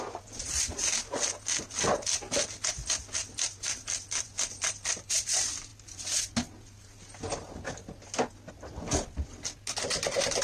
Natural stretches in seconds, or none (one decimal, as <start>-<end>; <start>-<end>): 0.0-10.4